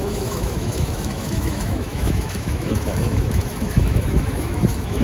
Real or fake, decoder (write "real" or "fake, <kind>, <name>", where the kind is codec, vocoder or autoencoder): fake, autoencoder, DAC-VAE